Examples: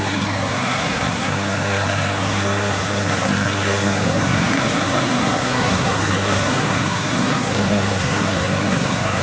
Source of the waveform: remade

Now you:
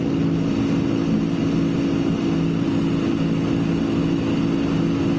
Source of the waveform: recorded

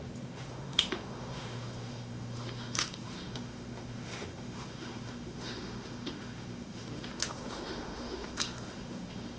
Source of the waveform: remade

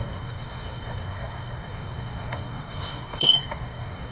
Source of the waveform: remade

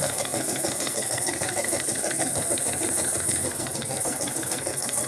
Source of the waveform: remade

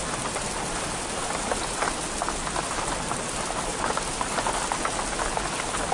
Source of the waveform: recorded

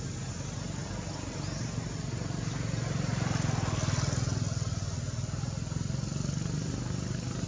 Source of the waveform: recorded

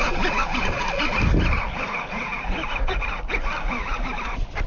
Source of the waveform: recorded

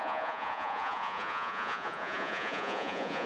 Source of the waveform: remade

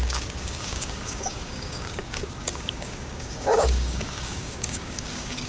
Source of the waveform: remade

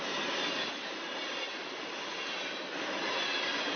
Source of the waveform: recorded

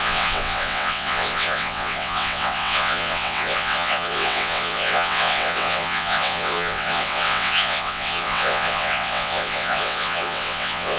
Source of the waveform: remade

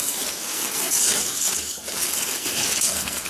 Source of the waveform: remade